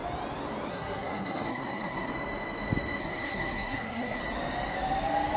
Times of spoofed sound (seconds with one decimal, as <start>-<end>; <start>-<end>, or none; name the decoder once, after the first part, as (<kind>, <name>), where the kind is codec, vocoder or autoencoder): 0.7-2.1 (codec, SNAC); 3.0-4.2